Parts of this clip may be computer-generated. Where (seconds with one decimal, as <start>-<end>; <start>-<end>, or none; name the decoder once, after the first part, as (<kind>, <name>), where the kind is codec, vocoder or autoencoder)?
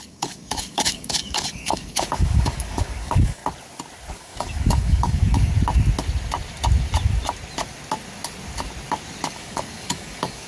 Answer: 0.0-3.4 (codec, DAC); 4.1-5.5; 9.3-10.5